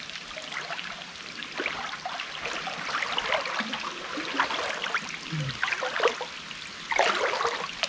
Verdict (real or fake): real